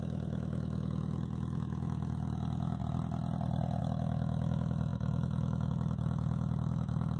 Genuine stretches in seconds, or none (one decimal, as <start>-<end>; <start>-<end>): 2.8-3.8